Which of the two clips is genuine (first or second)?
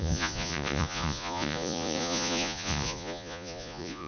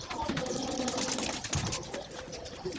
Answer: second